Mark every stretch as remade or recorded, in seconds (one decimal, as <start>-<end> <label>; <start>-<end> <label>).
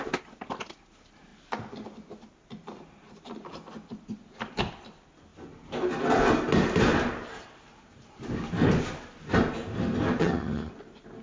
0.0-10.2 recorded; 10.2-10.7 remade; 10.7-11.2 recorded